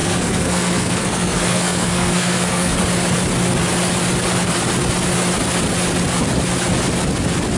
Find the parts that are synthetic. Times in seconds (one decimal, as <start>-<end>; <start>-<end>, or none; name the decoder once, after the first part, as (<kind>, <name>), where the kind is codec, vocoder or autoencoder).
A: 0.0-2.8 (codec, SNAC)